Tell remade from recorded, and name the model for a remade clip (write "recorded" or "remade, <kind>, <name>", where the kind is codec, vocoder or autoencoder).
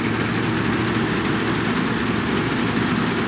recorded